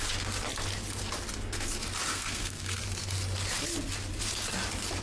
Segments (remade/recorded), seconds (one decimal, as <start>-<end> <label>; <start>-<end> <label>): 0.0-2.1 recorded; 2.1-2.8 remade; 2.8-5.0 recorded

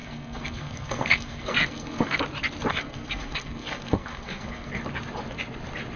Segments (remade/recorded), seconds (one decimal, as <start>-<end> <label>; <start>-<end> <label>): 0.0-2.2 remade; 2.2-2.7 recorded; 2.7-4.7 remade; 4.7-6.0 recorded

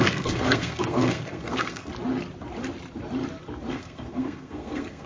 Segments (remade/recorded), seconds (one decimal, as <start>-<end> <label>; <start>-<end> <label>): 0.0-1.9 remade; 1.9-3.7 recorded; 3.7-5.1 remade

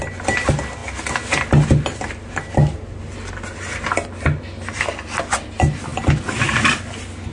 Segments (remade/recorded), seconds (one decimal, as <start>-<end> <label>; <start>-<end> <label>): 0.0-7.3 recorded

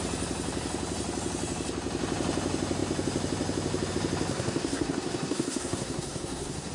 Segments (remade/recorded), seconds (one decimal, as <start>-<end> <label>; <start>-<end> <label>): 0.0-4.3 recorded; 4.3-6.7 remade